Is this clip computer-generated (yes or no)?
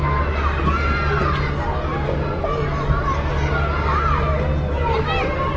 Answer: no